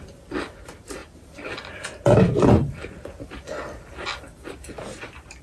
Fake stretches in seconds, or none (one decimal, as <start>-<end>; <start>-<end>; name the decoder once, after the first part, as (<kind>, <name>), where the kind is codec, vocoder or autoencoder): 1.0-4.2 (vocoder, BigVGAN v2)